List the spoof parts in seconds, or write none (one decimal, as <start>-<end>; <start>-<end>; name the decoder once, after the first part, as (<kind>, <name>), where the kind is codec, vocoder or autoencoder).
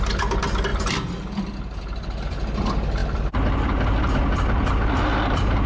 none